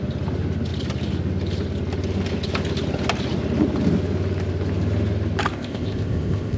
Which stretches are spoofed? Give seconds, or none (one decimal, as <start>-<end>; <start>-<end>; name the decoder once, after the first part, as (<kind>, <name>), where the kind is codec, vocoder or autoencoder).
5.5-6.6 (codec, ZipCodec)